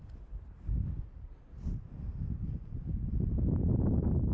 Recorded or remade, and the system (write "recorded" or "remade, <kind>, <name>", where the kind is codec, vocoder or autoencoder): recorded